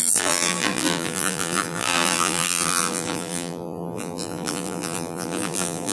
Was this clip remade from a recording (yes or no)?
yes